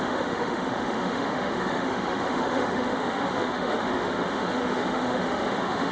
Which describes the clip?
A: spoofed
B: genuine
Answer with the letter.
A